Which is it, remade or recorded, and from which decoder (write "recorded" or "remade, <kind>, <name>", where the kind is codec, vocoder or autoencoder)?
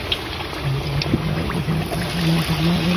recorded